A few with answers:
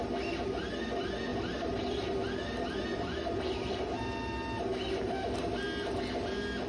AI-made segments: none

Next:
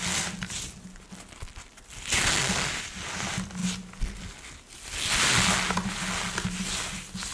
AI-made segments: none

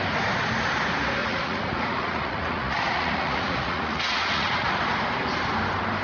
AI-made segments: 1.2-4.8 (vocoder, Vocos)